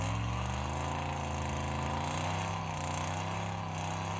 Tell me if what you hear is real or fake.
real